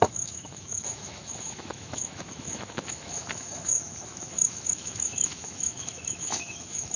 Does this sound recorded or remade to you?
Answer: remade